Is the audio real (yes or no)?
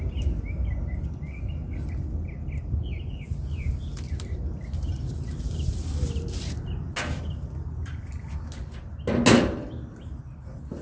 yes